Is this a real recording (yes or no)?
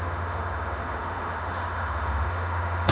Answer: no